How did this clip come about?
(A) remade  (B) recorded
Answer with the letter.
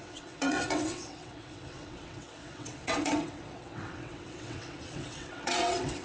A